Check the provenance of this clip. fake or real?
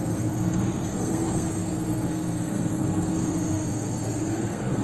fake